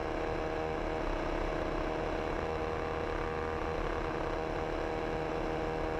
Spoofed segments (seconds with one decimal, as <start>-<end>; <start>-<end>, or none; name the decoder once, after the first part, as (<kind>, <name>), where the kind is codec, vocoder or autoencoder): none